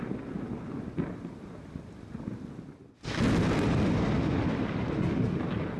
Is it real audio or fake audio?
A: real